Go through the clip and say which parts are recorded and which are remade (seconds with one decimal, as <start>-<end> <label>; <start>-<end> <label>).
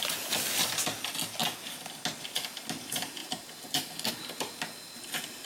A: 0.0-3.2 recorded; 3.2-4.1 remade; 4.1-5.5 recorded